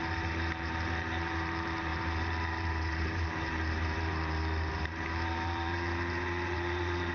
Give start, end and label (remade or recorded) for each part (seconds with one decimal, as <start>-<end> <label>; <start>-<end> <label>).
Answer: 0.0-7.1 remade